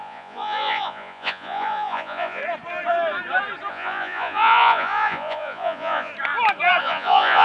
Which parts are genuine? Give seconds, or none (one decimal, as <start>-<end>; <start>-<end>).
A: 2.4-3.7; 6.1-6.8